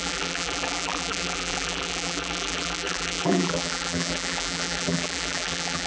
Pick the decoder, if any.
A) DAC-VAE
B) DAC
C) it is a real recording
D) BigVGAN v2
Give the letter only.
D